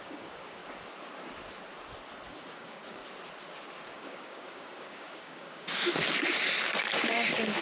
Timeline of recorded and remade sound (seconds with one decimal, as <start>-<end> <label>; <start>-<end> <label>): 0.0-0.6 remade; 0.6-2.3 recorded; 2.3-3.0 remade; 3.0-3.8 recorded; 3.8-5.7 remade; 5.7-6.8 recorded; 6.8-7.6 remade